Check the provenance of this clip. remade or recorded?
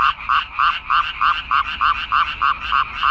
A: recorded